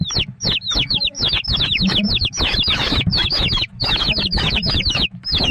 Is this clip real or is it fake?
fake